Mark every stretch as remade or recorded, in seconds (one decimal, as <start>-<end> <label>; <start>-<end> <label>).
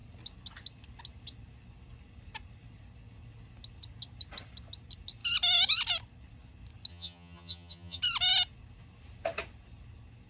0.0-6.9 recorded; 6.9-8.0 remade; 8.0-10.3 recorded